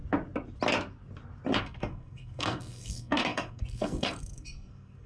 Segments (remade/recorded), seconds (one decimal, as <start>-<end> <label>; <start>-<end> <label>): 0.0-1.6 recorded; 1.6-5.1 remade